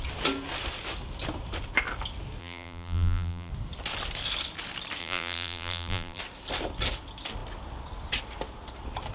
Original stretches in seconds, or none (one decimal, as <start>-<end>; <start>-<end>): 0.0-2.4; 3.5-5.0; 6.2-9.1